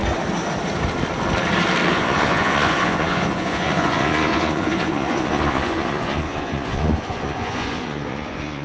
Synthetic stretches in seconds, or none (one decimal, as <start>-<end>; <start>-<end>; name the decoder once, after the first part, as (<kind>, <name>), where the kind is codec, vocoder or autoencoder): 1.9-8.6 (vocoder, Vocos)